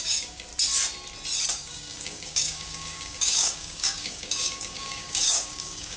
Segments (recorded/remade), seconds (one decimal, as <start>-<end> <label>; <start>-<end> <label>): 0.0-0.5 remade; 0.5-1.5 recorded; 1.5-6.0 remade